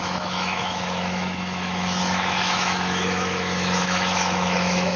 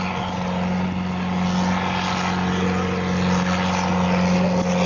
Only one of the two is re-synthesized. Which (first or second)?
first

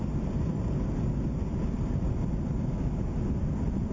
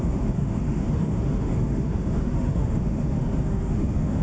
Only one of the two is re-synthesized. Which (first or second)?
second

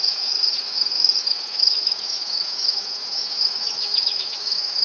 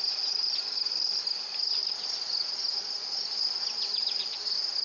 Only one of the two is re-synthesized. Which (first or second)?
first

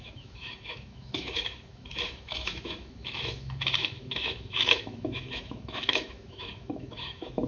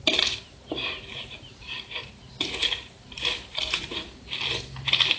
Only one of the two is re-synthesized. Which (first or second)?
first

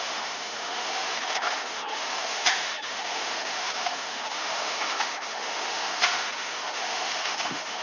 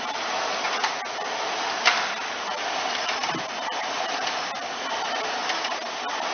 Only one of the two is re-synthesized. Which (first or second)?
first